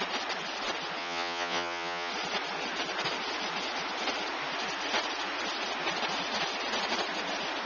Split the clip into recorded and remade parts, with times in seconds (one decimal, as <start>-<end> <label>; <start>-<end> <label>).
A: 0.0-1.0 recorded; 1.0-2.1 remade; 2.1-7.7 recorded